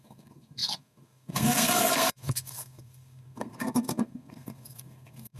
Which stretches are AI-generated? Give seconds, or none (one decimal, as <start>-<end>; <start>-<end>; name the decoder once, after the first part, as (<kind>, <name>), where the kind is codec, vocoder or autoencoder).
0.0-5.4 (codec, SNAC)